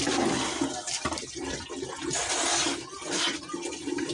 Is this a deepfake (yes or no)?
no